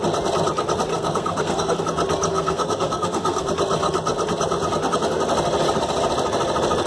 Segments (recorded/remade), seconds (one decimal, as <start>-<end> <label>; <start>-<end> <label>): 0.0-0.9 recorded; 0.9-1.8 remade; 1.8-2.3 recorded; 2.3-3.5 remade; 3.5-6.9 recorded